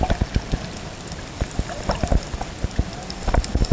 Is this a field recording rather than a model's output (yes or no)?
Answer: yes